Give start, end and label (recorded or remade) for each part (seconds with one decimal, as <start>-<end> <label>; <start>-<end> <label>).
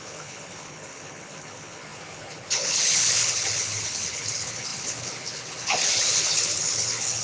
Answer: 0.0-7.2 remade